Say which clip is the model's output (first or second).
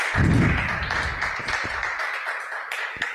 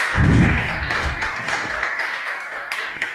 second